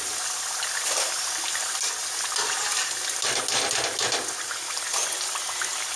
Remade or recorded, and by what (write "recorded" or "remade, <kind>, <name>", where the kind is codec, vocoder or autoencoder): recorded